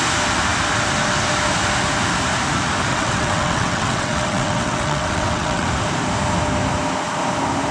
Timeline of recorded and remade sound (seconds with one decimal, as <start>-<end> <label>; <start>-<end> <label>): 0.0-2.9 recorded; 2.9-5.7 remade; 5.7-7.7 recorded